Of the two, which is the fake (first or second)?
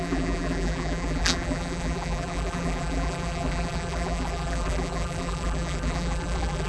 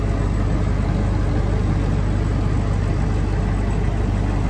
first